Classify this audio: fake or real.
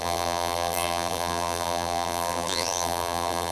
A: fake